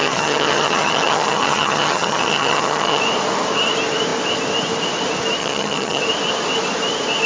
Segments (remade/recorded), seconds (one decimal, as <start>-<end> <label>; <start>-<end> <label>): 0.0-3.0 remade; 3.0-5.4 recorded; 5.4-6.0 remade; 6.0-7.3 recorded